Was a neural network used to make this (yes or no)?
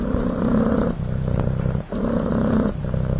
yes